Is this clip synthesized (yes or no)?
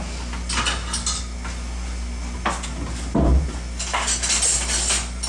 no